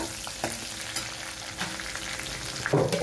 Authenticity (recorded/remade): recorded